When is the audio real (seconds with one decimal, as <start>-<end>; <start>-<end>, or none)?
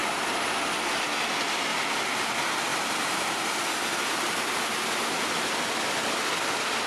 0.6-2.7; 3.8-6.9